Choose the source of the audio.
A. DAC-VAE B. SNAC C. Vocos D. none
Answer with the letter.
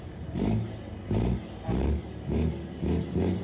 D